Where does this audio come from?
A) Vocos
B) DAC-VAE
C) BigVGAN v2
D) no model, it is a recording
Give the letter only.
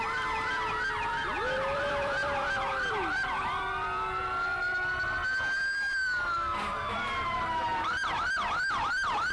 C